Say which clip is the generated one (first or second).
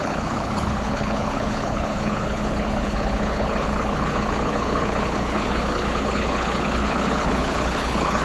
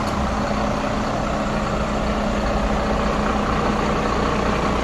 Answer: first